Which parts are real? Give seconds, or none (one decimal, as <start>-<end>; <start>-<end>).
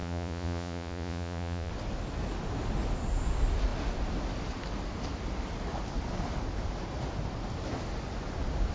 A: 1.7-8.7